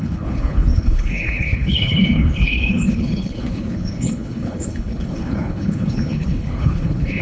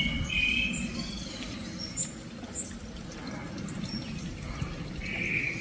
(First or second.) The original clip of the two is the second